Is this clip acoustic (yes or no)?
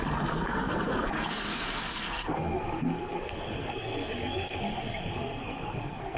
no